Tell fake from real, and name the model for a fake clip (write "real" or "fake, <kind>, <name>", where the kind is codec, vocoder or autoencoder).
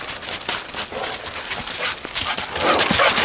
real